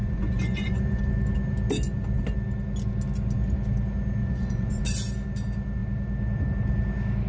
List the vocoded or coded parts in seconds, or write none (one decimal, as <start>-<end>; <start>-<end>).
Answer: 0.0-1.0; 4.2-4.8